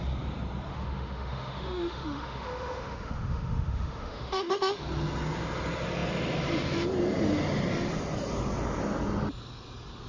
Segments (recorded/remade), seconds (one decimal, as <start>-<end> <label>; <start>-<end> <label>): 0.0-0.7 recorded; 0.7-4.8 remade; 4.8-10.1 recorded